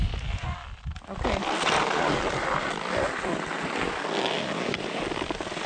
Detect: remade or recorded recorded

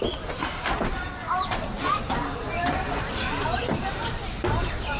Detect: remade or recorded remade